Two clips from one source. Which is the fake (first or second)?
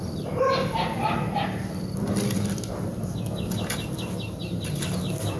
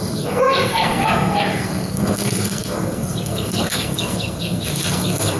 second